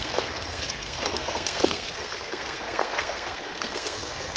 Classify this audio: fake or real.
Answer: fake